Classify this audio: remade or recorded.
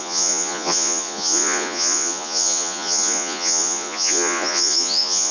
remade